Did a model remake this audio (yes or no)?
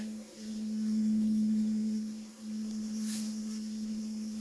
yes